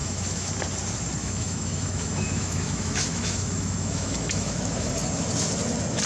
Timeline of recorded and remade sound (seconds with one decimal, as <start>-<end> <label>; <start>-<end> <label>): 0.0-0.5 remade; 0.5-1.2 recorded; 1.2-4.9 remade; 4.9-6.1 recorded